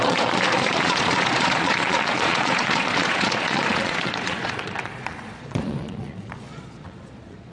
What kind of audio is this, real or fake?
fake